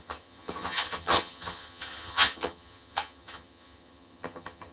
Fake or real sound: fake